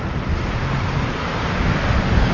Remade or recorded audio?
recorded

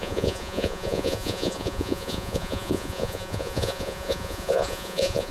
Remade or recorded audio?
remade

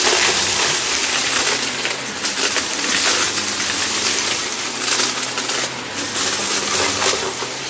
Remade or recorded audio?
recorded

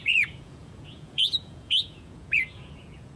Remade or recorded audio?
remade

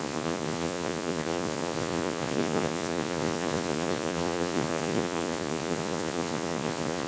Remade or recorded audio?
remade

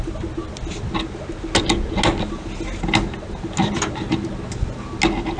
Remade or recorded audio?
recorded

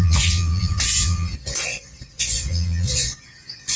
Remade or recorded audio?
remade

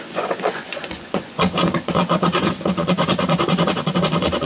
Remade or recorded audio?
remade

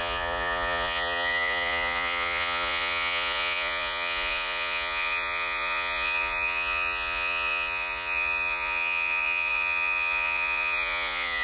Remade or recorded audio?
remade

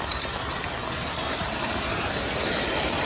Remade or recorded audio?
recorded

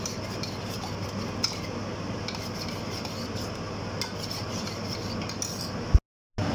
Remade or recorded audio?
recorded